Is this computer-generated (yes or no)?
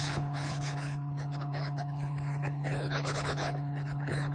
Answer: yes